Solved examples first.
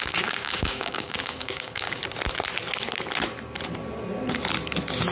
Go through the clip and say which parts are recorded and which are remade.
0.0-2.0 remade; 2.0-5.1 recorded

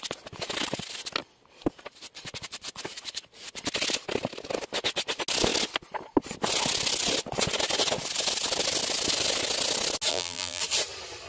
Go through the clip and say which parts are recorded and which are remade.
0.0-10.1 recorded; 10.1-10.6 remade; 10.6-11.3 recorded

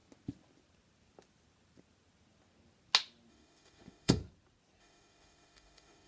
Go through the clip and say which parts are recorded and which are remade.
0.0-3.3 recorded; 3.3-4.2 remade; 4.2-4.8 recorded; 4.8-6.1 remade

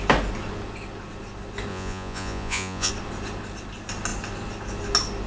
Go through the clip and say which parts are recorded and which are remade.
0.0-1.7 recorded; 1.7-2.9 remade; 2.9-5.3 recorded

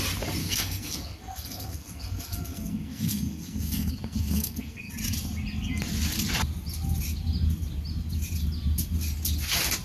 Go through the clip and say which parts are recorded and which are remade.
0.0-0.4 recorded; 0.4-4.9 remade; 4.9-9.8 recorded

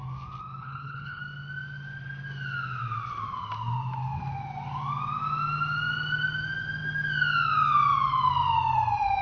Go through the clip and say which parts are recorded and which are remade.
0.0-0.6 recorded; 0.6-1.2 remade; 1.2-9.2 recorded

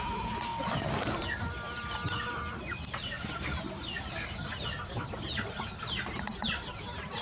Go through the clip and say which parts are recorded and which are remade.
0.0-7.2 recorded